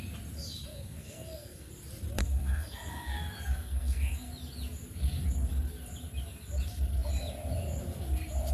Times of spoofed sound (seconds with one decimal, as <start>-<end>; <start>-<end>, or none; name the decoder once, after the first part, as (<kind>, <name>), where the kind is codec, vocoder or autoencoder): 0.7-1.7 (codec, SNAC); 2.2-4.3